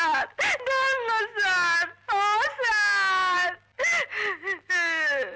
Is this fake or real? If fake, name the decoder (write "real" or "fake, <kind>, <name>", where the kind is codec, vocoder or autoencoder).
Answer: real